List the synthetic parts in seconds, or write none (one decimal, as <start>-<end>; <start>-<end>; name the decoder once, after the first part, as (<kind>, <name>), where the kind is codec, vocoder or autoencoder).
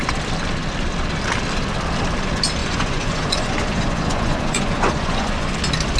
2.6-5.5 (vocoder, Vocos)